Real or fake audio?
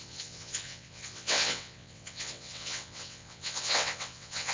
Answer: fake